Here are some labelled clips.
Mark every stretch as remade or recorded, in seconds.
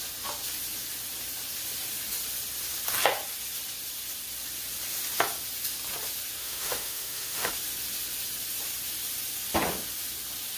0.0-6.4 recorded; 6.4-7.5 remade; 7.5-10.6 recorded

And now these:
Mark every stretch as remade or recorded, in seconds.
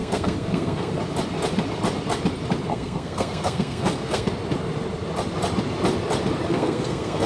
0.0-0.9 remade; 0.9-2.7 recorded; 2.7-4.3 remade; 4.3-6.5 recorded; 6.5-7.3 remade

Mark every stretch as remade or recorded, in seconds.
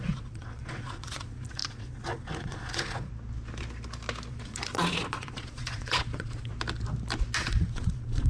0.0-3.1 remade; 3.1-4.3 recorded; 4.3-6.5 remade; 6.5-7.4 recorded; 7.4-8.3 remade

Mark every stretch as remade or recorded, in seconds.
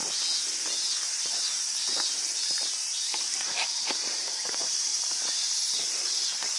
0.0-1.1 recorded; 1.1-6.6 remade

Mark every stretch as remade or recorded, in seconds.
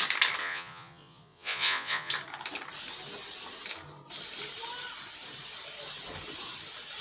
0.0-0.4 recorded; 0.4-2.1 remade; 2.1-7.0 recorded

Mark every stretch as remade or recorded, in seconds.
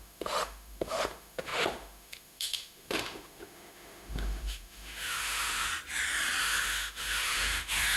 0.0-5.7 remade; 5.7-6.4 recorded; 6.4-8.0 remade